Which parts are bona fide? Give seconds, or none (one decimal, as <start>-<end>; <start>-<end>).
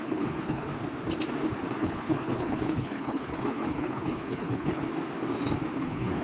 0.7-1.8; 4.8-5.8